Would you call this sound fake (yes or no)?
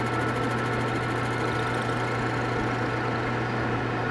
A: no